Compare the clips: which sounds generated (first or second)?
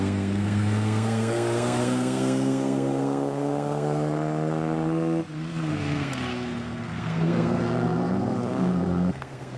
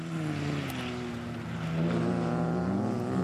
first